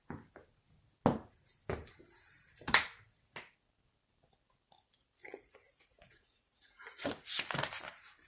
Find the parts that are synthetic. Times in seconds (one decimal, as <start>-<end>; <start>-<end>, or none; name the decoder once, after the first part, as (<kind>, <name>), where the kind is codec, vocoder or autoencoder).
5.2-7.1 (vocoder, Vocos)